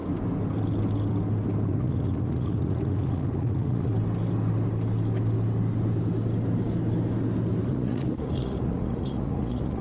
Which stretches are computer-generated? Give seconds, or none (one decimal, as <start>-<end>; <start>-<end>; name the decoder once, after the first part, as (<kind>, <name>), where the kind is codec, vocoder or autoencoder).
1.7-3.9 (vocoder, Vocos); 7.7-9.8